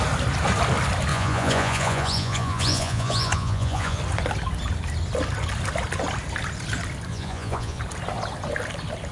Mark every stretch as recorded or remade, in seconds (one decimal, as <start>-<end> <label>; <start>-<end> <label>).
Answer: 0.0-1.1 recorded; 1.1-4.0 remade; 4.0-7.1 recorded; 7.1-7.8 remade; 7.8-9.1 recorded

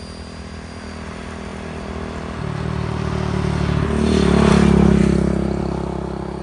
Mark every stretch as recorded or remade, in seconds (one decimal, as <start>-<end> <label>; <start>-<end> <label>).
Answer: 0.0-6.4 recorded